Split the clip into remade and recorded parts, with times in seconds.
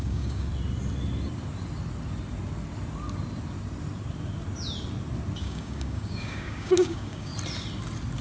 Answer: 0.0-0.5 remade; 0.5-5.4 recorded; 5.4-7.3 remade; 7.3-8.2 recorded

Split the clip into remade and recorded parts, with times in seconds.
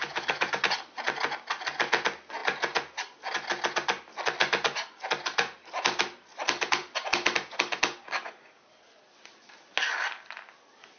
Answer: 0.0-0.6 remade; 0.6-11.0 recorded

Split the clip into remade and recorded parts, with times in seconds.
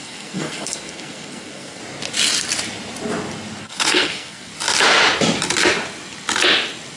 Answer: 0.0-1.8 remade; 1.8-3.6 recorded; 3.6-4.5 remade; 4.5-7.0 recorded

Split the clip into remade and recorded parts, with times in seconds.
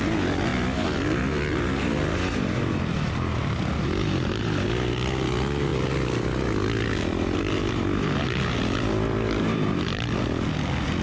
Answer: 0.0-11.0 recorded